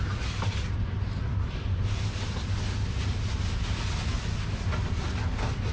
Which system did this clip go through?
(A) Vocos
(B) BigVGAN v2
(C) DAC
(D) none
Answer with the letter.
D